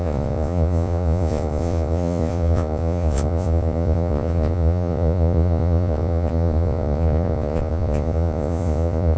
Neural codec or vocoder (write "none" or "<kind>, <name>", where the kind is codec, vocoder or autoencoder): vocoder, Vocos